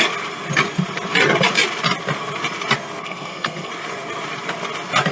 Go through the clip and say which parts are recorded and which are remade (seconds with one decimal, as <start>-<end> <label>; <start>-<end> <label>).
0.0-3.0 recorded; 3.0-3.7 remade; 3.7-5.1 recorded